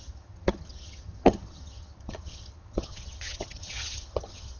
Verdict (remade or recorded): remade